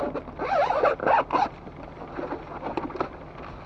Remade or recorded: recorded